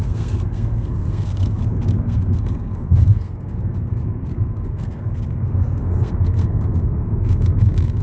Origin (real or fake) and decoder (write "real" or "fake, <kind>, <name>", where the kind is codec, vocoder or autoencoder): fake, codec, SNAC